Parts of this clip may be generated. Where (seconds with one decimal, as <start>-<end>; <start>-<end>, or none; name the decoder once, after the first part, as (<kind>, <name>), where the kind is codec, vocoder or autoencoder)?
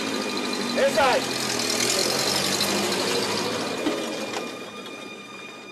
none